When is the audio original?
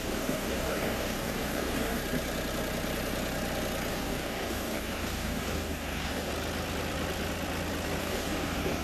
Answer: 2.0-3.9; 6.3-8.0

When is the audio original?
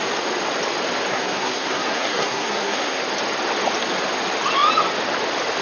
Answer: 0.0-1.1; 3.0-5.6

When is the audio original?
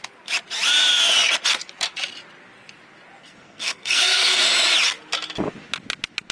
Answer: 0.0-3.2; 4.5-6.3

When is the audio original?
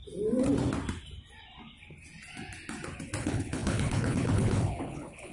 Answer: 0.0-3.2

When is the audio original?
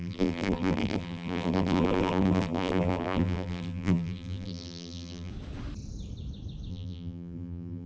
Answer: 5.3-6.7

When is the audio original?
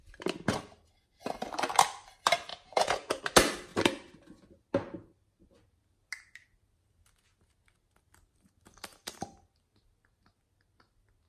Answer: 0.0-2.5; 3.2-11.3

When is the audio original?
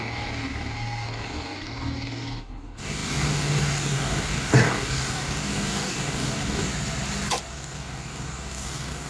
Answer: 6.7-7.5